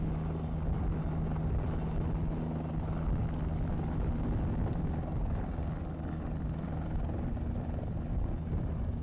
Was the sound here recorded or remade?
recorded